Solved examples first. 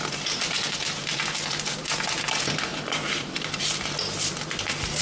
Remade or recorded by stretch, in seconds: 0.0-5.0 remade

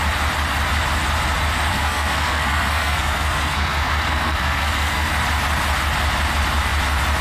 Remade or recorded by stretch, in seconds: 0.0-1.7 recorded; 1.7-5.1 remade; 5.1-7.2 recorded

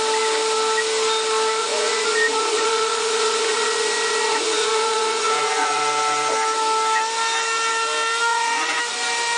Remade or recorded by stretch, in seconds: 0.0-1.6 recorded; 1.6-5.8 remade; 5.8-8.3 recorded; 8.3-8.8 remade; 8.8-9.4 recorded

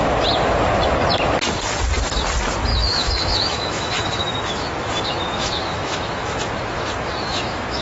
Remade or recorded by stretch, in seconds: 0.0-2.7 recorded; 2.7-7.8 remade

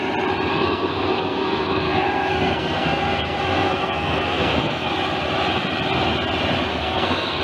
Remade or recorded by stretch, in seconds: 0.0-0.5 recorded; 0.5-4.9 remade; 4.9-6.7 recorded; 6.7-7.4 remade

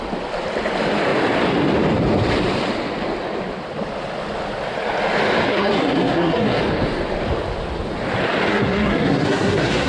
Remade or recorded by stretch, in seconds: 0.0-5.5 recorded; 5.5-6.6 remade; 6.6-8.5 recorded; 8.5-9.9 remade

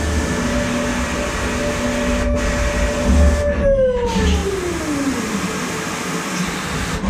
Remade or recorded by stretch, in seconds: 0.0-7.1 recorded

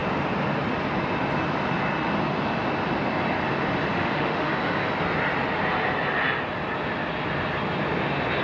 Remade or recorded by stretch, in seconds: 0.0-3.9 recorded; 3.9-4.5 remade; 4.5-8.4 recorded